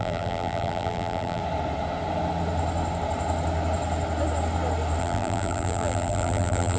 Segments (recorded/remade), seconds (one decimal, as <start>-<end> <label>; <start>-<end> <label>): 0.0-1.4 remade; 1.4-5.0 recorded; 5.0-6.8 remade